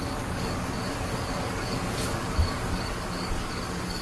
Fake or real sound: fake